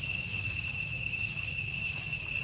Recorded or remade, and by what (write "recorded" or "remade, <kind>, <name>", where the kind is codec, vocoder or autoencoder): remade, codec, DAC